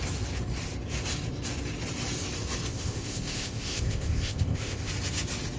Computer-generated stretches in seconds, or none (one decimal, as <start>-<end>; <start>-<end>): 2.7-4.9